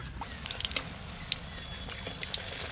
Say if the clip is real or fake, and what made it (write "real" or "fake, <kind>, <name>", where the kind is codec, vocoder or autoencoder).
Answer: real